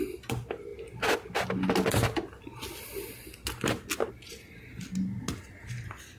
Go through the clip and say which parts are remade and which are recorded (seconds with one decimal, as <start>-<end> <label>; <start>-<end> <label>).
0.0-6.2 recorded